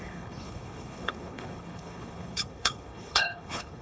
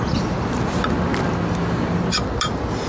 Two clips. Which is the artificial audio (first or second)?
first